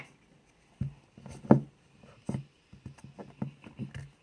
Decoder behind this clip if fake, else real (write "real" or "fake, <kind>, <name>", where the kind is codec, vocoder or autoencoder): real